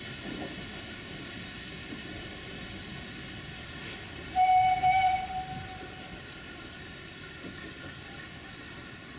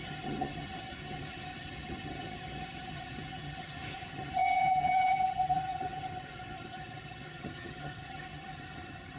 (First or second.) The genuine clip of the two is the first